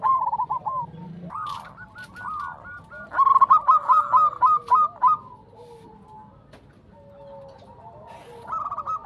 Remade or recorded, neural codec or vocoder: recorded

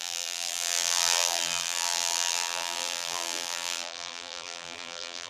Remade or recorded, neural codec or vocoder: remade, vocoder, BigVGAN v2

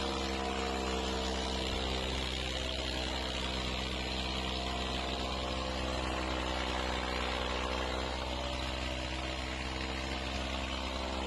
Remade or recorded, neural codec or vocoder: recorded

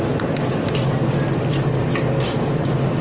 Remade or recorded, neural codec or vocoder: recorded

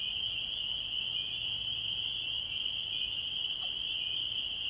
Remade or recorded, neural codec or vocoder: recorded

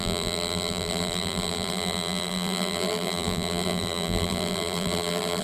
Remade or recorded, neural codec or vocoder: remade, vocoder, BigVGAN v2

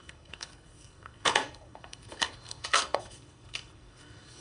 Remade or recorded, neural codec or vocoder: remade, codec, SNAC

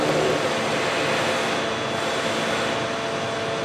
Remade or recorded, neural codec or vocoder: recorded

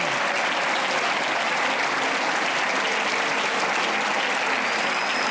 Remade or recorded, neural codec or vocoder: recorded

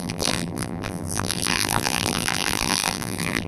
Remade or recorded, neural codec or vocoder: remade, vocoder, BigVGAN v2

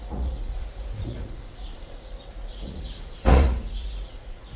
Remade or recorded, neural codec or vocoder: remade, vocoder, Vocos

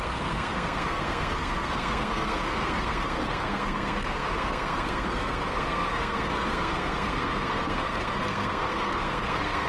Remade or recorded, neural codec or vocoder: remade, codec, SNAC